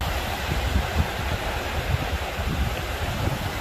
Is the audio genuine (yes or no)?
yes